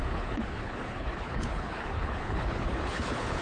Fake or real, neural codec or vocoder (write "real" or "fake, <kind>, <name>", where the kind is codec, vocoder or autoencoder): fake, codec, HILCodec